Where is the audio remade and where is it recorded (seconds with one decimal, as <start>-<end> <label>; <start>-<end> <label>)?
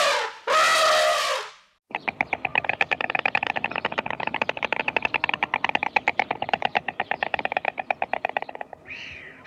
0.0-2.5 recorded; 2.5-4.8 remade; 4.8-5.8 recorded; 5.8-9.5 remade